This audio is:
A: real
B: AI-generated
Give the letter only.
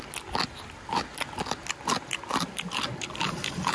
A